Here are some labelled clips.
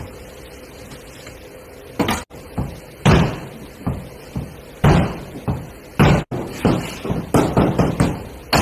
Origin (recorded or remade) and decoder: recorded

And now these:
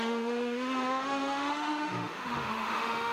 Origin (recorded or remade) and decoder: remade, autoencoder, DAC-VAE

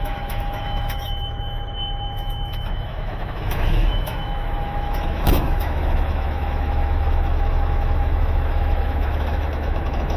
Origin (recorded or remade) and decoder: remade, autoencoder, DAC-VAE